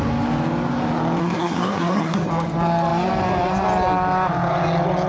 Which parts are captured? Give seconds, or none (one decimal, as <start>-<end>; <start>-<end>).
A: 0.0-1.2; 2.3-5.1